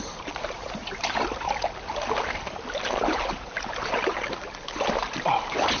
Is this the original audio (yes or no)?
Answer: yes